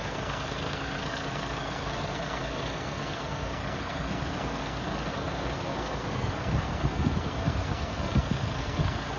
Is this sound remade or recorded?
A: remade